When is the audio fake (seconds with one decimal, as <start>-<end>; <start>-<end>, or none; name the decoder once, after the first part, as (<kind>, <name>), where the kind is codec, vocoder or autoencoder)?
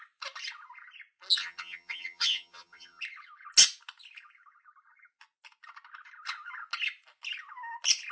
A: 1.4-3.0 (vocoder, HiFi-GAN)